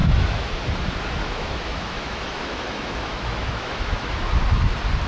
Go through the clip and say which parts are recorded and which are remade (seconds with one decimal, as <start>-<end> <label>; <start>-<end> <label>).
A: 0.0-0.5 remade; 0.5-1.2 recorded; 1.2-4.3 remade; 4.3-5.1 recorded

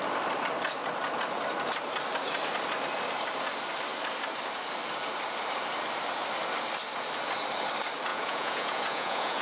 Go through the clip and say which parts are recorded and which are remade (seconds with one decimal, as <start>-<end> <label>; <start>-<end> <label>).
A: 0.0-8.1 recorded; 8.1-9.4 remade

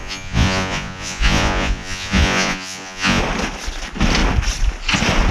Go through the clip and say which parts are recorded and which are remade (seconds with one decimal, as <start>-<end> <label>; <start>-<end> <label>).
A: 0.0-3.2 remade; 3.2-5.3 recorded

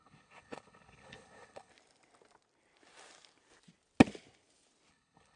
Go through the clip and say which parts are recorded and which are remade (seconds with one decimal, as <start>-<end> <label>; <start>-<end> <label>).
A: 0.0-1.7 remade; 1.7-4.9 recorded; 4.9-5.4 remade

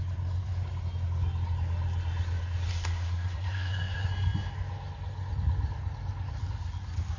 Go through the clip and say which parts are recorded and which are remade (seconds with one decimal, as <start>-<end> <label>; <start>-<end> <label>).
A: 0.0-2.7 recorded; 2.7-4.1 remade; 4.1-7.2 recorded

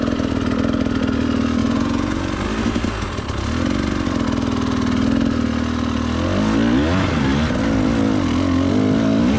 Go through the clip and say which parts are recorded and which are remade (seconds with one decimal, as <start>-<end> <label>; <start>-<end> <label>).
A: 0.0-1.6 recorded; 1.6-2.2 remade; 2.2-9.4 recorded